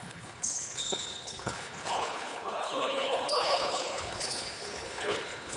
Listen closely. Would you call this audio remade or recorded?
remade